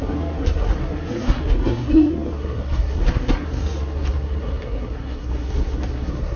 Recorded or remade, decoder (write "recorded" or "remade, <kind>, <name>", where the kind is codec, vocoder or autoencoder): remade, codec, SNAC